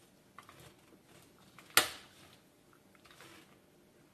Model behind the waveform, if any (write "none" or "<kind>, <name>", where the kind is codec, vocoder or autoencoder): none